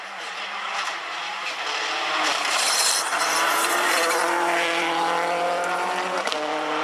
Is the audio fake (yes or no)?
yes